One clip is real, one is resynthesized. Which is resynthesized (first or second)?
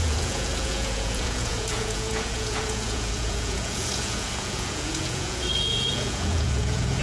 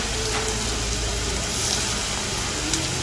first